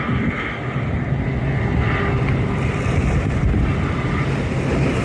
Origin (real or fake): real